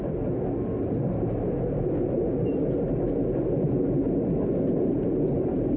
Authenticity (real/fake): real